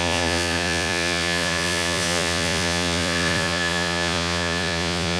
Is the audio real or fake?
fake